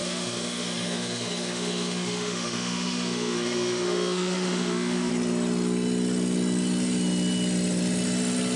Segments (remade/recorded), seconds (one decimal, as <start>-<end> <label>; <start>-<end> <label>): 0.0-5.1 remade; 5.1-8.6 recorded